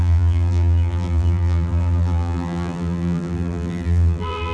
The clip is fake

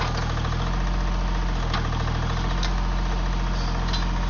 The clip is real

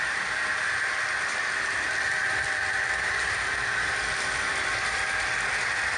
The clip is fake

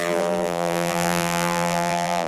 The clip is fake